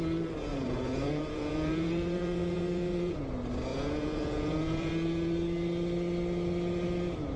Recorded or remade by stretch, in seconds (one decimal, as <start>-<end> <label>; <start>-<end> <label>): 0.0-0.5 recorded; 0.5-3.2 remade; 3.2-3.7 recorded; 3.7-4.9 remade; 4.9-7.4 recorded